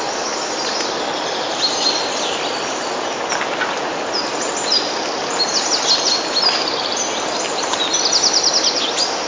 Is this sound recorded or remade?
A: recorded